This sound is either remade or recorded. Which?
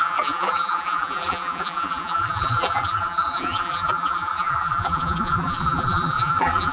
remade